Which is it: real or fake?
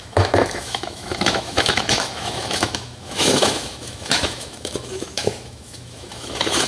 fake